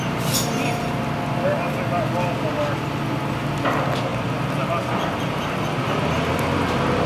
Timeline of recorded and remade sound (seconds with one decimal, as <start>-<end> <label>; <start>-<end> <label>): 0.0-7.1 recorded